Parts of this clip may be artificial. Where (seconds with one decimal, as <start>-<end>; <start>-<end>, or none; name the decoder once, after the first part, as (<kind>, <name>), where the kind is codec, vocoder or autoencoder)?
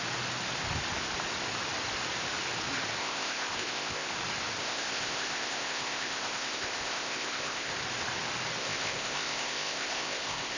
3.0-4.1 (codec, ZipCodec); 4.6-7.7; 8.6-10.6